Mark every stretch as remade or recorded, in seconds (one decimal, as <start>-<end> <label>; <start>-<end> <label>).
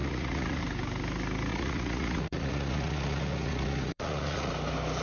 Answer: 0.0-0.6 remade; 0.6-1.5 recorded; 1.5-4.5 remade; 4.5-5.0 recorded